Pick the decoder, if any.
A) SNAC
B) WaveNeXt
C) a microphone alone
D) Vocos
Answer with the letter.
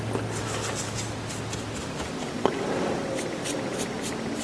C